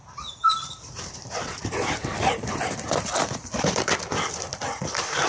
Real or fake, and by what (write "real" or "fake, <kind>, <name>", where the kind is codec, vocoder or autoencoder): fake, vocoder, BigVGAN v2